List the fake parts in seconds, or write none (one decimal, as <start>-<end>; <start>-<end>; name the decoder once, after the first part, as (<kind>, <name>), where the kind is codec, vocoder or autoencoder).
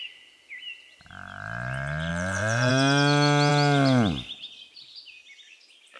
2.1-2.7 (vocoder, Vocos)